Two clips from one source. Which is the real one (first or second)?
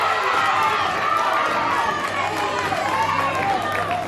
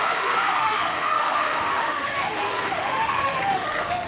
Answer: first